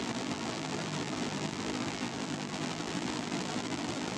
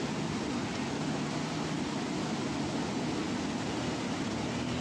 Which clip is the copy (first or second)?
first